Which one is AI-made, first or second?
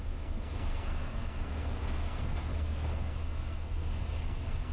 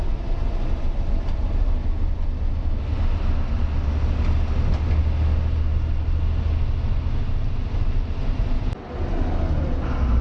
first